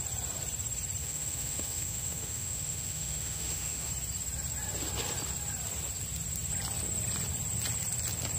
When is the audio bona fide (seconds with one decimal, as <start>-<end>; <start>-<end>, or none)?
0.0-1.0; 3.9-8.4